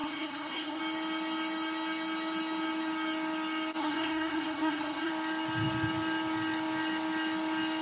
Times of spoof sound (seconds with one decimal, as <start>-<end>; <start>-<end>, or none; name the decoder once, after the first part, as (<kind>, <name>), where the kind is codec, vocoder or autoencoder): 0.0-0.8 (codec, SNAC); 3.8-5.1